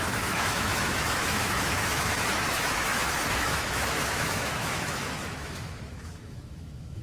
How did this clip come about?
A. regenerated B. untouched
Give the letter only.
A